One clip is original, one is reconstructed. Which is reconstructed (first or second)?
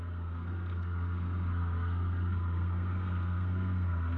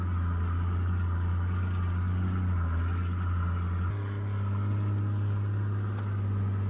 first